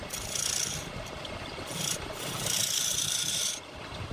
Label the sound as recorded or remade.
remade